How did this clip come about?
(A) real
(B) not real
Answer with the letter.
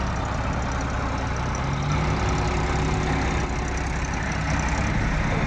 A